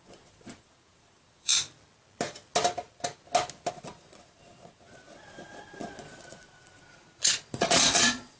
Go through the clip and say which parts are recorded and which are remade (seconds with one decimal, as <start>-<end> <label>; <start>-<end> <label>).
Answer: 0.0-1.5 remade; 1.5-3.7 recorded; 3.7-8.4 remade